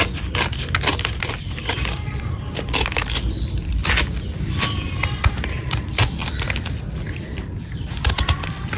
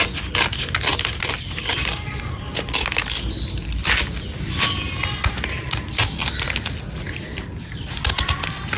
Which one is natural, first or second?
second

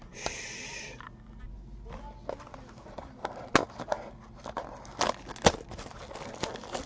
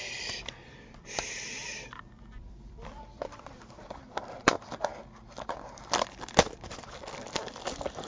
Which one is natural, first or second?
first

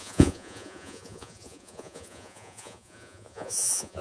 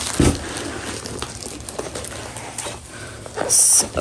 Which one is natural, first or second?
second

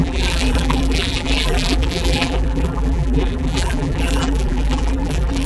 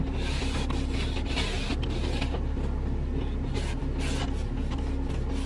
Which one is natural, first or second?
second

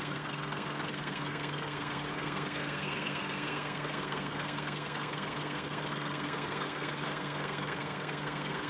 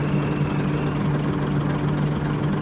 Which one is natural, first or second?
second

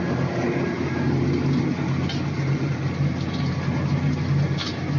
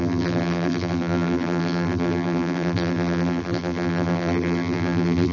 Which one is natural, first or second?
first